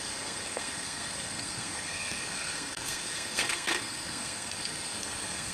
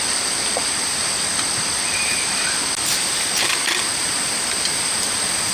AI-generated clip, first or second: first